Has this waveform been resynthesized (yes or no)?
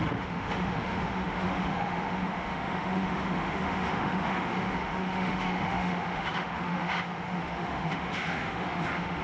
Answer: yes